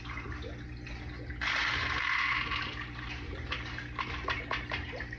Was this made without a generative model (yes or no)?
no